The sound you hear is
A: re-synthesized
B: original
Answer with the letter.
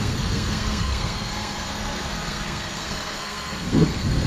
A